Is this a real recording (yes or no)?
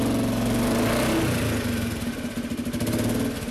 yes